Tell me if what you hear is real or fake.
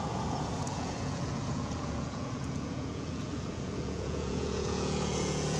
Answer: fake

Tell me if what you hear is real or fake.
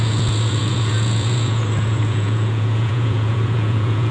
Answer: fake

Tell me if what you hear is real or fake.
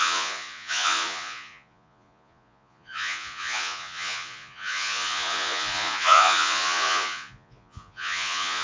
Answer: fake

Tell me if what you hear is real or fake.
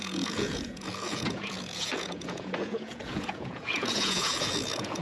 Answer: fake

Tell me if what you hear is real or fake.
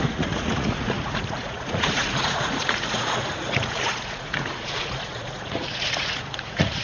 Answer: fake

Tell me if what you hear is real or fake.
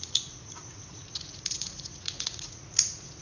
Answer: fake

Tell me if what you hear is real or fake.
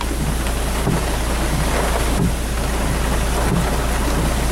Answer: real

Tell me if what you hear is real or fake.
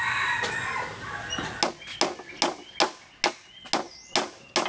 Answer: real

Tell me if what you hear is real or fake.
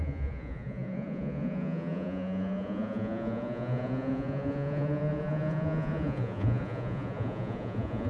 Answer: fake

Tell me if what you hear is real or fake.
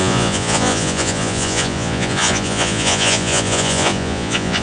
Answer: fake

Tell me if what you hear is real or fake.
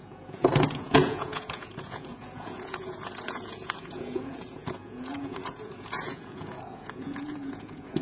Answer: fake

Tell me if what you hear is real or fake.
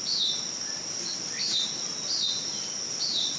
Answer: real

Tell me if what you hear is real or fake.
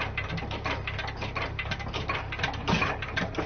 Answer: real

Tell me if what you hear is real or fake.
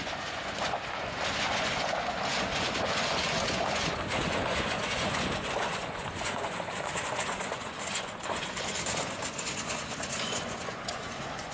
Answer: fake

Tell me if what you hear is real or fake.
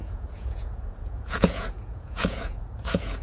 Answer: fake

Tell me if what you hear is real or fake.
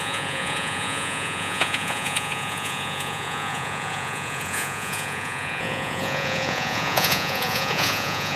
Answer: fake